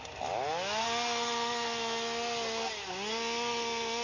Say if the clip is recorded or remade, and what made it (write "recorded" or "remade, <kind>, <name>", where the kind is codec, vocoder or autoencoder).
recorded